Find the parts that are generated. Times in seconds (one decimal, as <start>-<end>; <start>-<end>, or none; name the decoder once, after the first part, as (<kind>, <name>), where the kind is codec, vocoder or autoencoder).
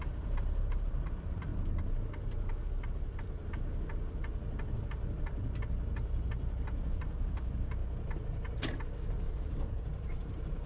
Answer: 0.0-1.5 (vocoder, BigVGAN v2); 4.7-7.8; 9.4-10.7